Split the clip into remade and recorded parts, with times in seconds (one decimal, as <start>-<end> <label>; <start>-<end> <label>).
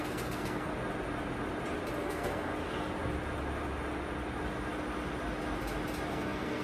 0.0-0.7 remade; 0.7-2.0 recorded; 2.0-2.5 remade; 2.5-6.1 recorded; 6.1-6.6 remade